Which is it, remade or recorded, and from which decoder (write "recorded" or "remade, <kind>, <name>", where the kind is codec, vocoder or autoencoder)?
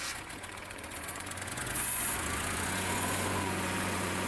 remade, vocoder, Vocos